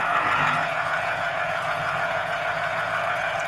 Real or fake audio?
fake